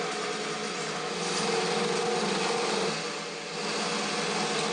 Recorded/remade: recorded